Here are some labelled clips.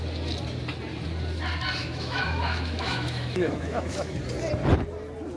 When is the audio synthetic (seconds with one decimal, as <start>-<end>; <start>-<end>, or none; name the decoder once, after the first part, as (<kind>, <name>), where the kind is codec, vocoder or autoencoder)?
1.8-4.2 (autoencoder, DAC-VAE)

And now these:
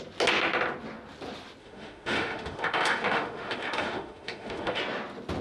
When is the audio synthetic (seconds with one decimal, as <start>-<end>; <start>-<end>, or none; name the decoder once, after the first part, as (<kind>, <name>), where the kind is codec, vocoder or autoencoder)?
1.6-4.8 (autoencoder, DAC-VAE)

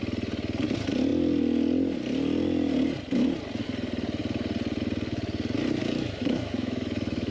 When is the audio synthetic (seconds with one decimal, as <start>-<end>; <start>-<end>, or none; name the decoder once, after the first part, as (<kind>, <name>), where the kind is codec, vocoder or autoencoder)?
5.8-7.3 (autoencoder, DAC-VAE)

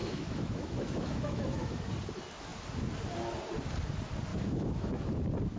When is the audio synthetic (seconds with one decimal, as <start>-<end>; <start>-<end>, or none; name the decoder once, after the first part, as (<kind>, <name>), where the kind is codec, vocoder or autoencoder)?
0.0-1.9 (autoencoder, DAC-VAE); 4.3-5.1